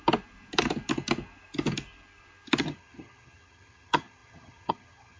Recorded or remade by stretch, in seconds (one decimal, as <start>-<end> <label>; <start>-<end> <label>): 0.0-2.6 recorded; 2.6-5.2 remade